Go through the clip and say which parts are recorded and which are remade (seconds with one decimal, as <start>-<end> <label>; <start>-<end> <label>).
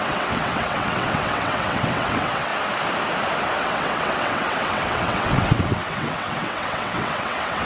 0.0-2.5 remade; 2.5-3.6 recorded; 3.6-7.7 remade